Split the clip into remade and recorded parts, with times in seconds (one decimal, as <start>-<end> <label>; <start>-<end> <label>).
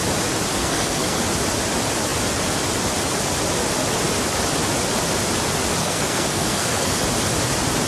0.0-0.6 recorded; 0.6-1.2 remade; 1.2-5.8 recorded; 5.8-7.0 remade; 7.0-7.9 recorded